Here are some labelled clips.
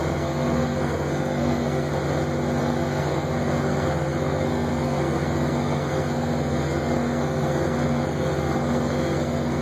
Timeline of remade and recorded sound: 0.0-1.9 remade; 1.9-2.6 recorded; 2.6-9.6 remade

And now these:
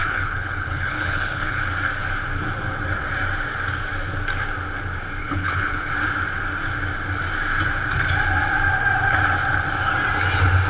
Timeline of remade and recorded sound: 0.0-1.6 remade; 1.6-5.2 recorded; 5.2-5.9 remade; 5.9-10.7 recorded

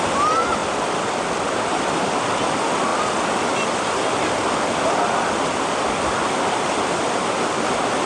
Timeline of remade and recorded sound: 0.0-8.1 recorded

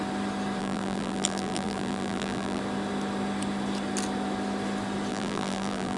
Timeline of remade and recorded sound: 0.0-0.6 recorded; 0.6-2.6 remade; 2.6-5.1 recorded; 5.1-6.0 remade

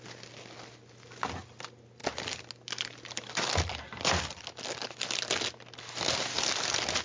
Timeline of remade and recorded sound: 0.0-7.0 recorded